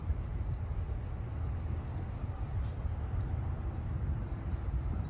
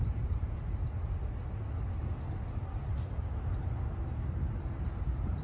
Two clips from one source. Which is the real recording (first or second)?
second